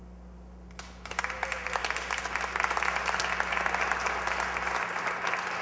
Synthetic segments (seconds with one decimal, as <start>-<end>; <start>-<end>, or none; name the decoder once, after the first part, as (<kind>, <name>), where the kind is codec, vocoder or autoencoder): none